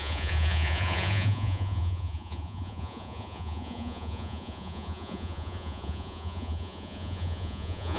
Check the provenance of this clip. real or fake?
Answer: fake